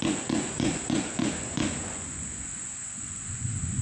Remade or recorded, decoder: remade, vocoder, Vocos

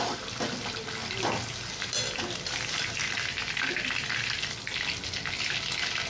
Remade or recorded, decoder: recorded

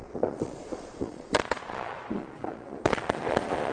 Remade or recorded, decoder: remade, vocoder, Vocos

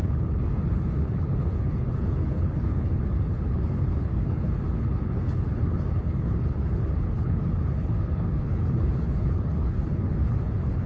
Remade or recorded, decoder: remade, codec, HILCodec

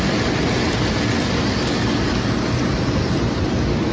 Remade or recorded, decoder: recorded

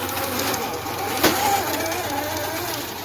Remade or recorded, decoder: recorded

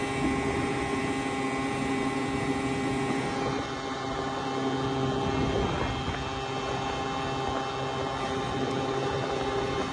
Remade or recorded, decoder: recorded